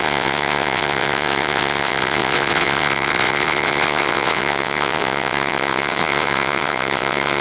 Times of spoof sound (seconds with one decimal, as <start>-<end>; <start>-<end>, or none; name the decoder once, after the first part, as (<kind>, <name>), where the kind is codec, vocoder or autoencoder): 0.0-7.4 (vocoder, WaveNeXt)